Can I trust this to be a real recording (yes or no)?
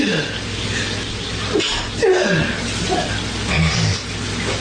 yes